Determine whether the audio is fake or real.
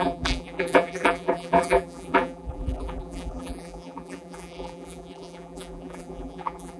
fake